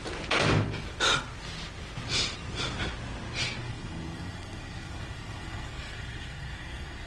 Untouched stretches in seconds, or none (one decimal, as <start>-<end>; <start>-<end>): 0.0-3.6